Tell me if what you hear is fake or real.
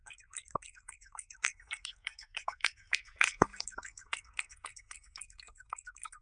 fake